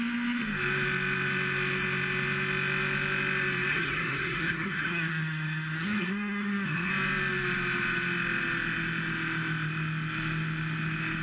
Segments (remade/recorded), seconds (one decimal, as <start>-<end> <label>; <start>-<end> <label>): 0.0-3.7 recorded; 3.7-6.9 remade; 6.9-11.2 recorded